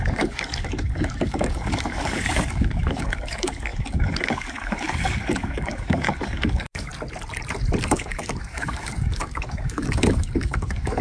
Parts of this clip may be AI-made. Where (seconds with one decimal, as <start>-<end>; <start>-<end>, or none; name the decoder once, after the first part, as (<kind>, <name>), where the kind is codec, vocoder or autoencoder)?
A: 0.0-6.9 (codec, DAC); 7.8-11.0